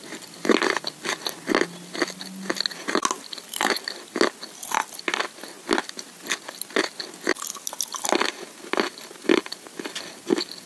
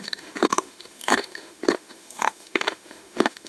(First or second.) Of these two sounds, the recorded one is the first